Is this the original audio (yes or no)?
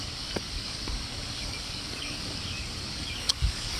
no